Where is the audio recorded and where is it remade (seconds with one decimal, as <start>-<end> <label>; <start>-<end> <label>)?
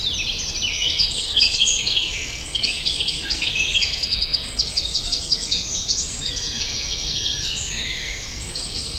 0.0-0.7 recorded; 0.7-9.0 remade